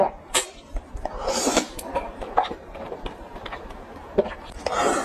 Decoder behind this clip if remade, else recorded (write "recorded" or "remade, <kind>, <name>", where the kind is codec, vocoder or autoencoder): remade, vocoder, BigVGAN v2